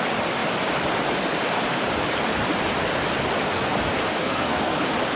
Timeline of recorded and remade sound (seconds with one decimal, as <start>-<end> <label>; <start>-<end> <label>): 0.0-4.2 recorded; 4.2-4.8 remade; 4.8-5.2 recorded